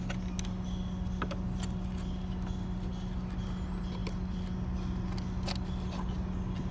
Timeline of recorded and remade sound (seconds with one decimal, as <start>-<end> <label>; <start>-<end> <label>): 0.0-6.7 recorded